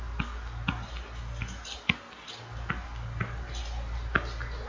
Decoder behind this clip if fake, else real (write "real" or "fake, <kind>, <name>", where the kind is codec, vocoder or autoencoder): real